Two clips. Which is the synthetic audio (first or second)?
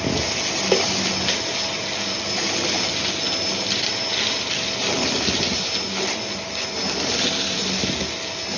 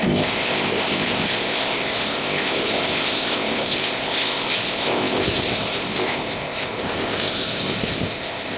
second